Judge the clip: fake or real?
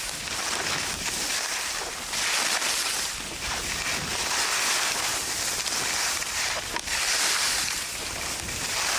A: real